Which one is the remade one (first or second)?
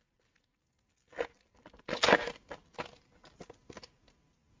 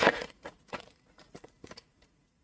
second